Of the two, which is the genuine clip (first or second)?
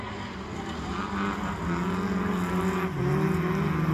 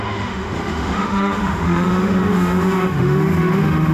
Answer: first